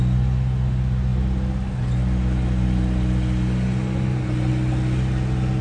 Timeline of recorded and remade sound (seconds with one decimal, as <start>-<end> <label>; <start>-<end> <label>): 0.0-5.6 recorded